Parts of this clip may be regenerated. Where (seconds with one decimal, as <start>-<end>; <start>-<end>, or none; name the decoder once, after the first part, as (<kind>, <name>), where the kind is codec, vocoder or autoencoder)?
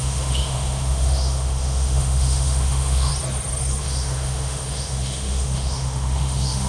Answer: 0.0-3.1 (autoencoder, DAC-VAE); 3.8-6.7